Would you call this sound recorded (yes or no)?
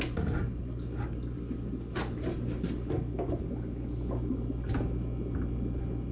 yes